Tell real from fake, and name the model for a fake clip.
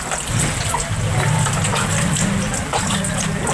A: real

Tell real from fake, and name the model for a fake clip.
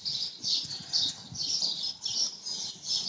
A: real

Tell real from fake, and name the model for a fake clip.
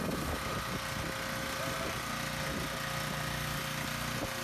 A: real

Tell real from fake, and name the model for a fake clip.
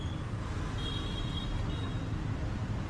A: real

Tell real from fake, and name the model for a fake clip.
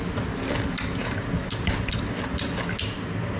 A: real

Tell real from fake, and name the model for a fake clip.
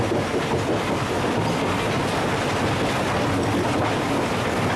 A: real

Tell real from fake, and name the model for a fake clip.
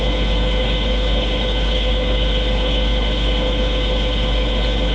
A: fake, codec, HILCodec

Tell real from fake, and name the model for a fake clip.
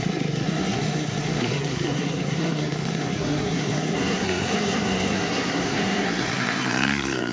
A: fake, codec, SNAC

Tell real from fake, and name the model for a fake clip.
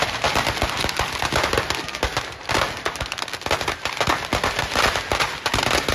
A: real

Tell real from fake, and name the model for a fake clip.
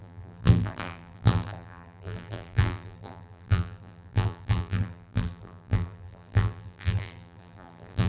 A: fake, vocoder, BigVGAN v2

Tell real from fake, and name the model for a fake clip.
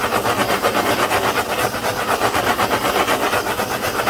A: real